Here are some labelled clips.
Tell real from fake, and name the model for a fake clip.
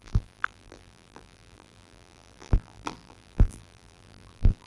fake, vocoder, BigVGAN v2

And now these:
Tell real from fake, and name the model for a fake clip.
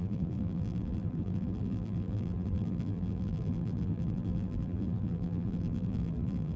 fake, vocoder, BigVGAN v2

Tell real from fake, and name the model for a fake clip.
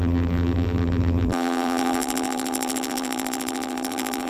fake, vocoder, BigVGAN v2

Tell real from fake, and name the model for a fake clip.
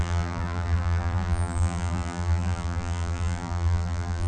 fake, vocoder, BigVGAN v2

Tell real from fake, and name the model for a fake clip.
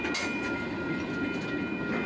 real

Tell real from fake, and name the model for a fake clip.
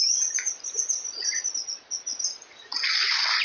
real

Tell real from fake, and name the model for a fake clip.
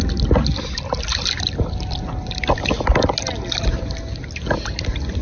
real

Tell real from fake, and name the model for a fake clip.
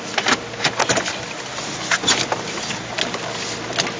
real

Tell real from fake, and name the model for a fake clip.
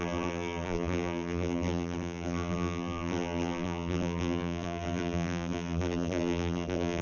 fake, vocoder, BigVGAN v2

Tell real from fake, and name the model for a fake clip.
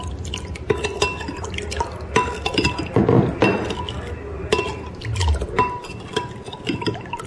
real